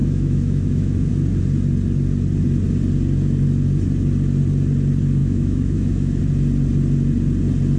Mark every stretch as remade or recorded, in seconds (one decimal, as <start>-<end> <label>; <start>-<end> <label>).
0.0-1.1 remade; 1.1-5.2 recorded; 5.2-6.2 remade; 6.2-7.8 recorded